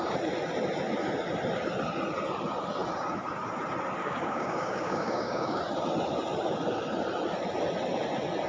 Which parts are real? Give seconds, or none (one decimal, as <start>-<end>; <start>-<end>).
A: 0.0-4.0; 5.6-8.5